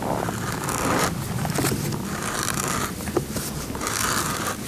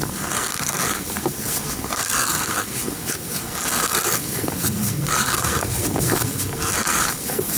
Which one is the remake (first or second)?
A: second